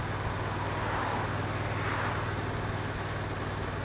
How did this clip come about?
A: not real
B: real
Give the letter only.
B